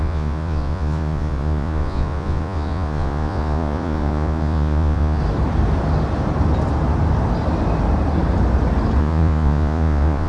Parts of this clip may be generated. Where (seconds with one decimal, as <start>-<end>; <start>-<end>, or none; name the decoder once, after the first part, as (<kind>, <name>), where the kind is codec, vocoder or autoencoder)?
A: 0.0-5.2 (vocoder, Vocos); 9.0-10.3